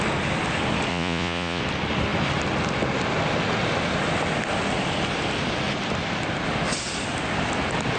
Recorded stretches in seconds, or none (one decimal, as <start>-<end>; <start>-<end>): 0.0-0.9; 1.6-8.0

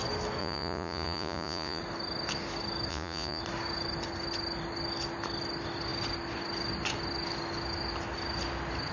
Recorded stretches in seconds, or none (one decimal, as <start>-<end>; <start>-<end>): 0.0-0.4; 1.8-2.9; 3.4-8.9

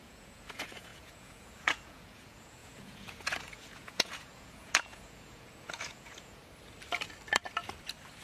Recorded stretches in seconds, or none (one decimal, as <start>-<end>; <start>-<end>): 6.4-8.2

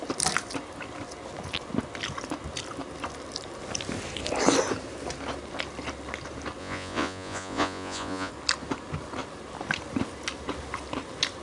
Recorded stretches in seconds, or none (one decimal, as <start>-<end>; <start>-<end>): 0.0-6.6; 8.3-11.4

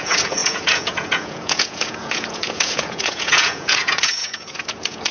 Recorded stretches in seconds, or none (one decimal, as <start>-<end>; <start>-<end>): none

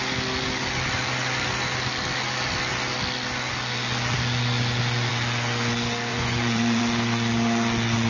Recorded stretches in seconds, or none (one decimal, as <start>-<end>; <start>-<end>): 0.0-6.1; 6.8-8.1

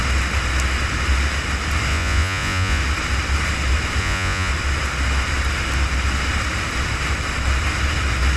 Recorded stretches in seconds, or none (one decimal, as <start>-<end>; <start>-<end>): 0.0-1.9; 2.8-4.0; 4.5-8.4